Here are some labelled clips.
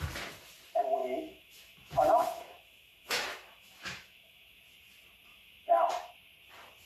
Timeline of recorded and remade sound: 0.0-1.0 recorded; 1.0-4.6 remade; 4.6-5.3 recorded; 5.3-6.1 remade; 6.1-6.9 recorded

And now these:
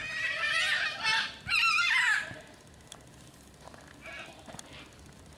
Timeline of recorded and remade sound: 0.0-5.4 recorded

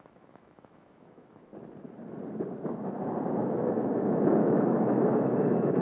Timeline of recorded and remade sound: 0.0-1.5 remade; 1.5-3.3 recorded; 3.3-5.8 remade

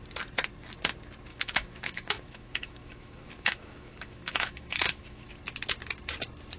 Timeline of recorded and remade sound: 0.0-1.3 recorded; 1.3-5.3 remade; 5.3-6.6 recorded

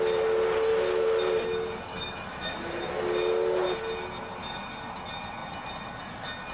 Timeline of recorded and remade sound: 0.0-1.9 recorded; 1.9-3.1 remade; 3.1-6.5 recorded